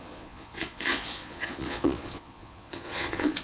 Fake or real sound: fake